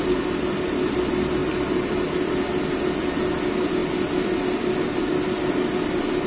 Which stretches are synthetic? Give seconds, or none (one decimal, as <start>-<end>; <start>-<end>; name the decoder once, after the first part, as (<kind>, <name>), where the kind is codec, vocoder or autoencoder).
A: none